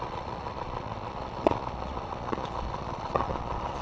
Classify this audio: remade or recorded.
remade